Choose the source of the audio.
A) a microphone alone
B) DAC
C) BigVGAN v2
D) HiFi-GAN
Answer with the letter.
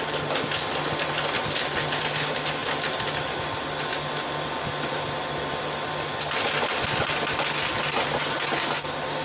A